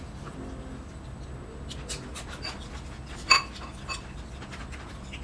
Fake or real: real